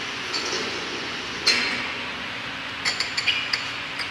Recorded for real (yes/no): no